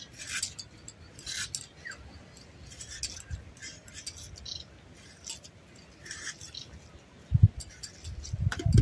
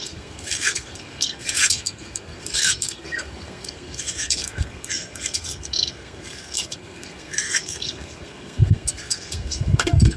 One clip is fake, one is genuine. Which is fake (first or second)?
second